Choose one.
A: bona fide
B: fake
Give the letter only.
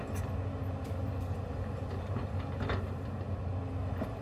A